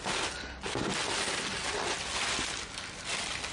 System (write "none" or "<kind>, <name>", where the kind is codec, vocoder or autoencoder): none